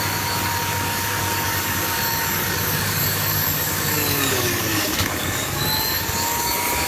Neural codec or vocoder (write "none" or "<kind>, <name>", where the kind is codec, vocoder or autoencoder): codec, DAC